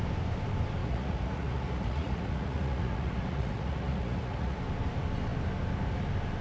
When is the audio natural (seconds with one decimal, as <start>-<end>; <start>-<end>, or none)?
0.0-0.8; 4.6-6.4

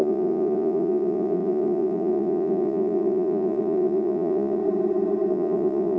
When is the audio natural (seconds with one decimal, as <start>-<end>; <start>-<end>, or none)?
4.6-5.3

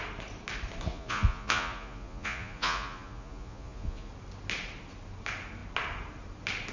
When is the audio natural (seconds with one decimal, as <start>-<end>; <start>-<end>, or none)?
0.0-0.9; 4.1-6.7